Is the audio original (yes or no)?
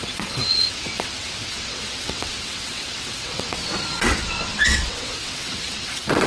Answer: no